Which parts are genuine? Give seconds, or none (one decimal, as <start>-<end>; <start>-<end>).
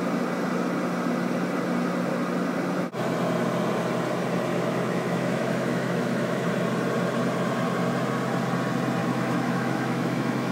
0.0-4.5; 6.5-9.0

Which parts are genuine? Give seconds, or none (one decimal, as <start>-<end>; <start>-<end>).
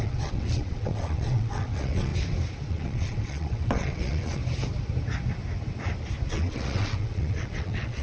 2.1-2.7; 4.4-6.3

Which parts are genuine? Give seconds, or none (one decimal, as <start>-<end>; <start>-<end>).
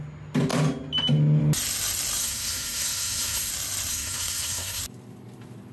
0.0-2.2; 3.5-3.9; 4.8-5.7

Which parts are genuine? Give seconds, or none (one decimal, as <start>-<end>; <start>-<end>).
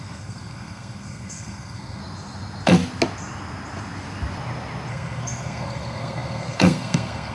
2.0-4.9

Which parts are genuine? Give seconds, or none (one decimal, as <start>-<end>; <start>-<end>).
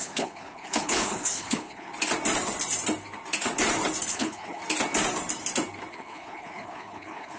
1.9-4.1; 4.6-5.9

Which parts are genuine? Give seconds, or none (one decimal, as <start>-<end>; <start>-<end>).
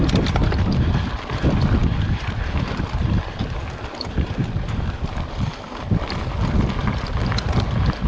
0.0-8.1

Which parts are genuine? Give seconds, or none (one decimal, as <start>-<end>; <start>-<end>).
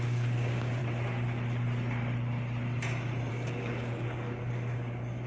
0.8-3.3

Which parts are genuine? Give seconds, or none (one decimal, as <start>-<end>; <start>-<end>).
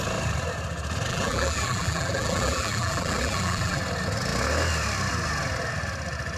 0.0-1.1; 3.8-6.4